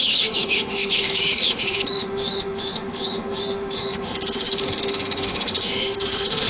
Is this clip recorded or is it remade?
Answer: remade